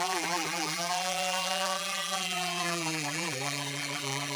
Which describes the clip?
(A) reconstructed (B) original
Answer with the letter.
A